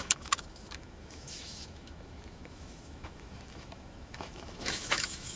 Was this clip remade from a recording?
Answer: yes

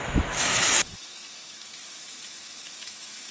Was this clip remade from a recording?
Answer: yes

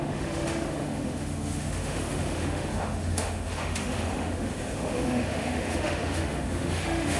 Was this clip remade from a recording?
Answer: yes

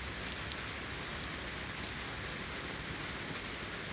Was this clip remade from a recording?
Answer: no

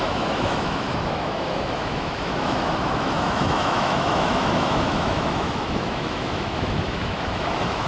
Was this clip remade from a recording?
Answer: yes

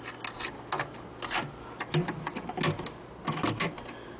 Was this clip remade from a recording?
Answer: no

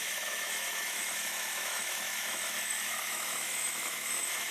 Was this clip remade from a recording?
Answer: yes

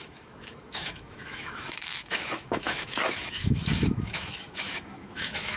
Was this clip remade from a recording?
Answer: yes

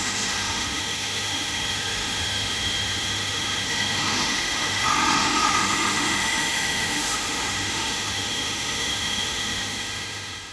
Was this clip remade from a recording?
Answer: yes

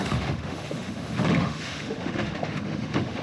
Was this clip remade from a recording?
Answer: yes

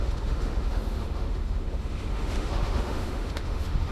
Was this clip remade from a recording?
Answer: yes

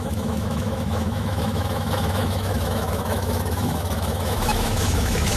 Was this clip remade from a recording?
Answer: yes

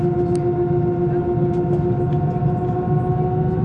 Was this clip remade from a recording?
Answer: no